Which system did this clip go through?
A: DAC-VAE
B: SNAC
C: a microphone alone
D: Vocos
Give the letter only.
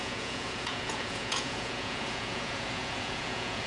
D